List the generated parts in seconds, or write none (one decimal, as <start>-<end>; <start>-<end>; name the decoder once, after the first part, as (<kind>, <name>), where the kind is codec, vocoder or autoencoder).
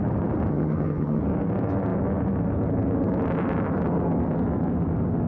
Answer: 0.5-1.2 (vocoder, HiFi-GAN)